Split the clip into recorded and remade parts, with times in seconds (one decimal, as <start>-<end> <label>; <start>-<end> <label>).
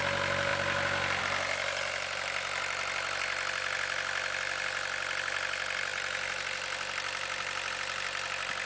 0.0-8.7 recorded